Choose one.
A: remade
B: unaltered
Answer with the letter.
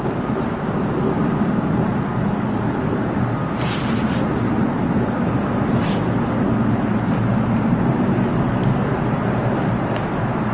B